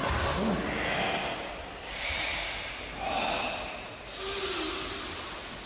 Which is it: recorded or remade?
recorded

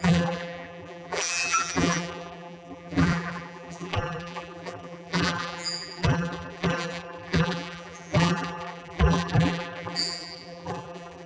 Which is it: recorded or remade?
remade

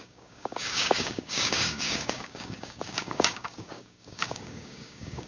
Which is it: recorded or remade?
remade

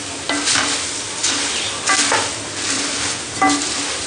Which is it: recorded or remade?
recorded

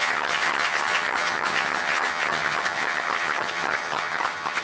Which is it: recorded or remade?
remade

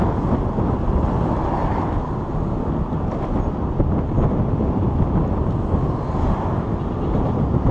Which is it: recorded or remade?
recorded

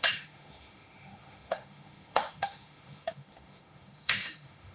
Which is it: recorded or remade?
remade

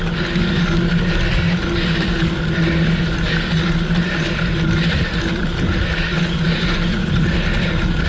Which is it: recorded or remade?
recorded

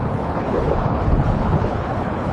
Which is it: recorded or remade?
remade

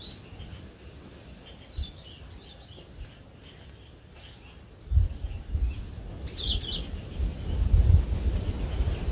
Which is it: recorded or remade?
recorded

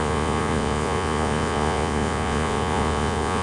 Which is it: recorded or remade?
remade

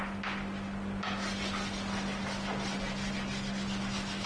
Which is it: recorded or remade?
recorded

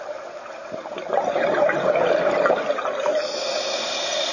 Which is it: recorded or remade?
recorded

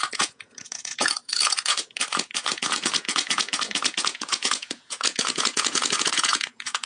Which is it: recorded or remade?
remade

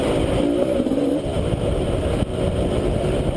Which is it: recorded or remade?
recorded